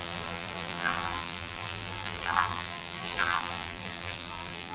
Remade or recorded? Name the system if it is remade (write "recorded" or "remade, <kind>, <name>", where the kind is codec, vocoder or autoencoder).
remade, vocoder, BigVGAN v2